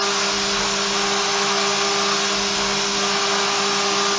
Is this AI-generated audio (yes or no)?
no